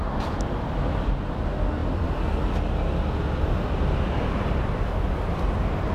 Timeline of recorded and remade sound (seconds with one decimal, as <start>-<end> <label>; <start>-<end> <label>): 0.0-5.9 recorded